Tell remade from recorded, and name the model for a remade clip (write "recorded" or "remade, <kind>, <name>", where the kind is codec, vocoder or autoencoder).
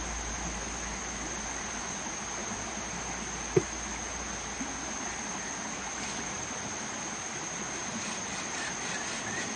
recorded